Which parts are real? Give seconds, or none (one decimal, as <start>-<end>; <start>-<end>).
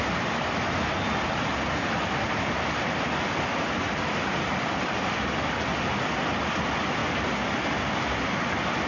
0.0-8.9